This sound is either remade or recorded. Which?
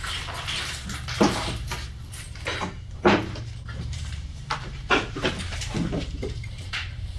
remade